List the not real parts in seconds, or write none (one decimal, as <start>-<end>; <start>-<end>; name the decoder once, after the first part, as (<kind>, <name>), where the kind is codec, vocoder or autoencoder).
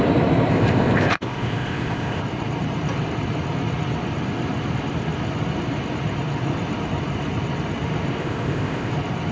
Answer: 0.5-2.2 (codec, ZipCodec); 8.2-8.9